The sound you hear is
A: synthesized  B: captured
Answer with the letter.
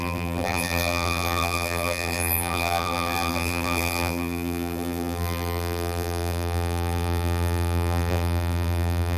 A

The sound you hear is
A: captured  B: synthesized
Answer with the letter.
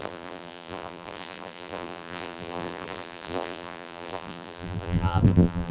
B